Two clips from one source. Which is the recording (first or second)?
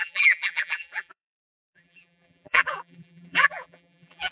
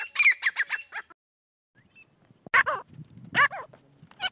second